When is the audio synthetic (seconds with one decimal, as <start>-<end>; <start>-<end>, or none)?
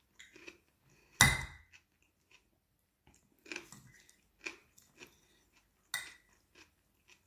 none